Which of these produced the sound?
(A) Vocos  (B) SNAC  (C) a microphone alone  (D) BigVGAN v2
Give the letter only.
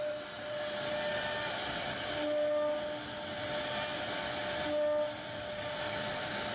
C